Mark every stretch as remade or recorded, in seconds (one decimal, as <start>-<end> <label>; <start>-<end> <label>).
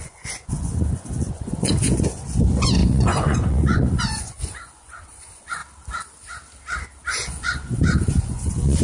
0.0-5.6 remade; 5.6-7.1 recorded; 7.1-8.8 remade